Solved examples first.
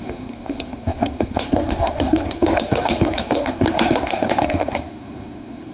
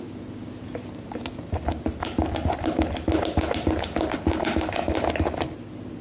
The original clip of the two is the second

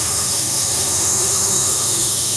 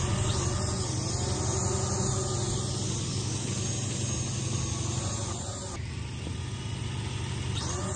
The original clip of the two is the second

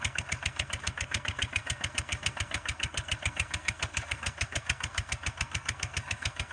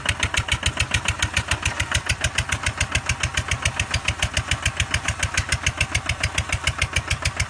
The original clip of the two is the second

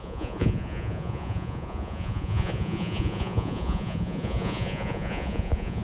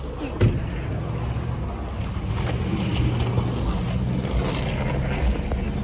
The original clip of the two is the second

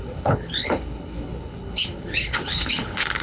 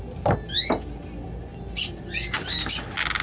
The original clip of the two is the second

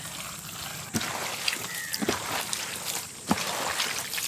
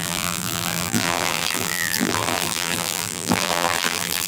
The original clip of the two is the first